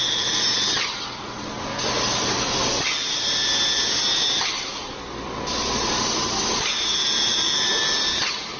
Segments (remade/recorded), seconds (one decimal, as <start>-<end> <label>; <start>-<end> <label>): 0.0-8.6 recorded